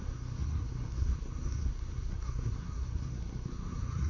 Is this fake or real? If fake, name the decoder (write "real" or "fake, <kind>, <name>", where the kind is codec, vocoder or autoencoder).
fake, codec, SNAC